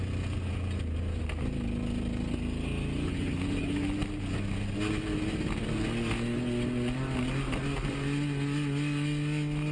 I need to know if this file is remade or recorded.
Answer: recorded